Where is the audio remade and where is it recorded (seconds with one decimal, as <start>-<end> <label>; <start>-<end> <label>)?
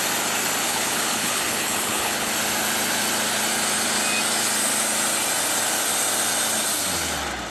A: 0.0-0.6 recorded; 0.6-2.3 remade; 2.3-7.5 recorded